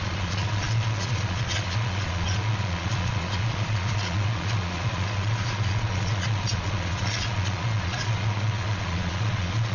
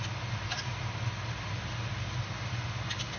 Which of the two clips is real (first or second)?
second